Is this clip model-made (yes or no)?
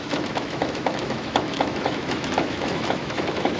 yes